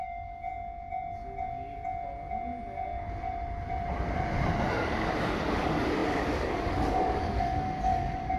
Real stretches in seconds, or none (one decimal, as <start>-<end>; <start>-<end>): 0.5-4.7